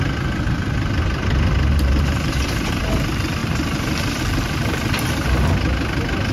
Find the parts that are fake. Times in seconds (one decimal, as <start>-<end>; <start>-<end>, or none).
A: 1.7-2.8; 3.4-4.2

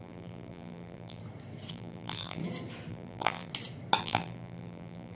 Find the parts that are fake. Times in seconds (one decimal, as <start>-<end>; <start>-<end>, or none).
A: 0.0-1.2; 1.7-2.4; 2.9-3.5; 4.0-5.1

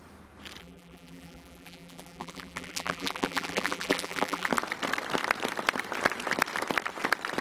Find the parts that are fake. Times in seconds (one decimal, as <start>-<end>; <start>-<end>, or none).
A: 0.6-4.5